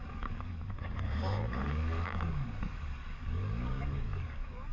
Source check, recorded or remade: remade